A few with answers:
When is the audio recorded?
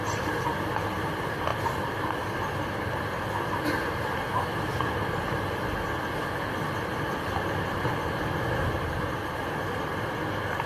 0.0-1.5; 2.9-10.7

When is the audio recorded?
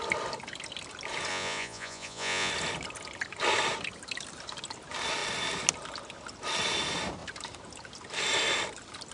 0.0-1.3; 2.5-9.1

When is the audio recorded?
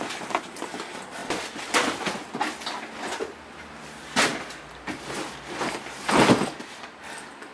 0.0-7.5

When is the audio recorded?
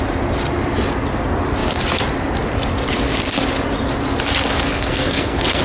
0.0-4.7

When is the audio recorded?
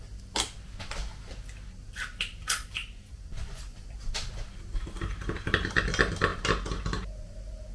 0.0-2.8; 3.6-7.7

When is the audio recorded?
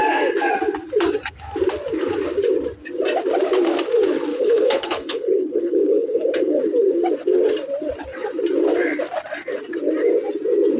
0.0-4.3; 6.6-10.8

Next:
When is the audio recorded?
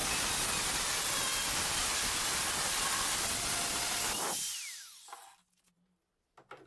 0.0-6.7